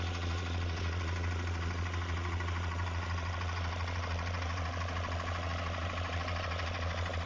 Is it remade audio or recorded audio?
remade